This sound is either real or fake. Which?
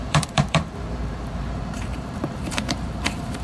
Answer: fake